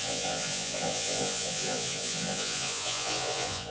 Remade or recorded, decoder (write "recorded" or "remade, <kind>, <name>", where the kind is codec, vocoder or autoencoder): remade, vocoder, Vocos